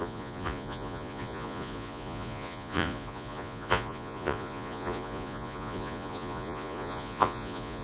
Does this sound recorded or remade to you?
remade